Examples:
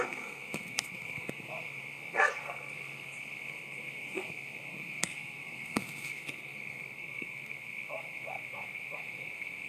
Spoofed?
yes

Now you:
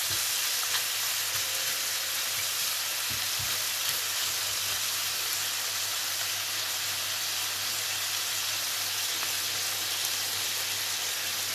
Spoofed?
no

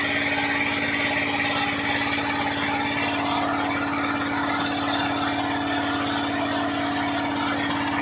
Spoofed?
no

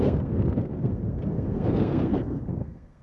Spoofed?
yes